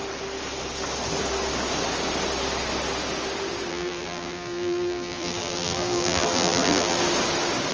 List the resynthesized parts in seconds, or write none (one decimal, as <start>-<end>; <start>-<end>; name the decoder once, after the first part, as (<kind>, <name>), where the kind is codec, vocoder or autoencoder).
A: 3.7-7.0 (vocoder, BigVGAN v2)